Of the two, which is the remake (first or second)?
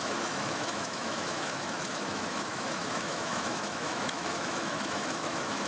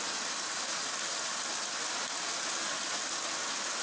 first